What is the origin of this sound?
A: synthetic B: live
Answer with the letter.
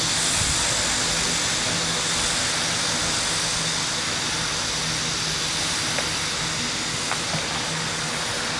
B